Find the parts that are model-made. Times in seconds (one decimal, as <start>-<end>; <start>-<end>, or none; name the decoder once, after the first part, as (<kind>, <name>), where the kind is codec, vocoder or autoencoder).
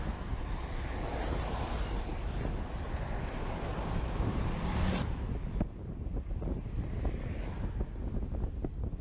3.7-5.0 (vocoder, BigVGAN v2)